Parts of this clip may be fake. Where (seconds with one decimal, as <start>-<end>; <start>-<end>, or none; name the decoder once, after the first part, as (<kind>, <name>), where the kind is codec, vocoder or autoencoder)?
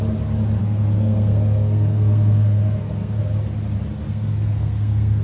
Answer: 0.6-3.2 (codec, SNAC); 4.1-5.2